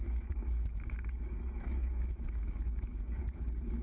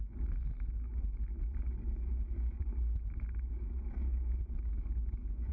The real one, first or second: second